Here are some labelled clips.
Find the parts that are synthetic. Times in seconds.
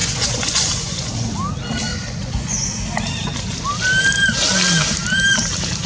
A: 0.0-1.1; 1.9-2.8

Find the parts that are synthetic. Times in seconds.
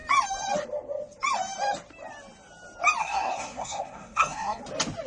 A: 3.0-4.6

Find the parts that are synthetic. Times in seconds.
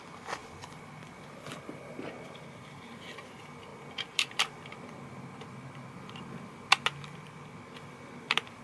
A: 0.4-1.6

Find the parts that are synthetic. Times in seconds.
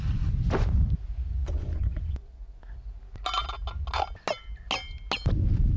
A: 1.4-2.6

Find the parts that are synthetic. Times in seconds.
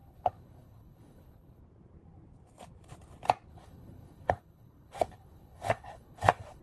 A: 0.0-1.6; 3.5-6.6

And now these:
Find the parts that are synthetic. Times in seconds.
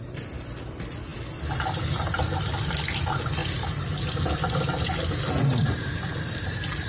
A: none